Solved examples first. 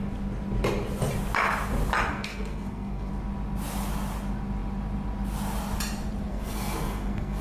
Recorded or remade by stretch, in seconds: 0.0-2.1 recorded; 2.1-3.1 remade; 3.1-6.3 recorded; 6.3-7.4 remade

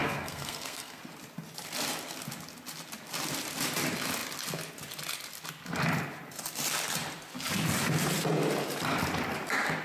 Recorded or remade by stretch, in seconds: 0.0-1.0 remade; 1.0-9.8 recorded